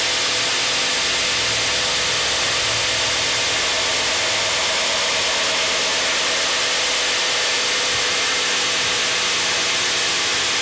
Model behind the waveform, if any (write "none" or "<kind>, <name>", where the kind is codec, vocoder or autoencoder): none